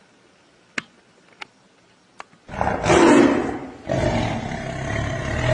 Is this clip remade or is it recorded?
recorded